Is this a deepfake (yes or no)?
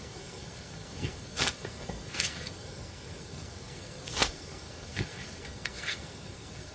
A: yes